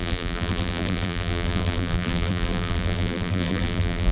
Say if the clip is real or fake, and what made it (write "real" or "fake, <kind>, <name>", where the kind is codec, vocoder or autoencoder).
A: fake, vocoder, BigVGAN v2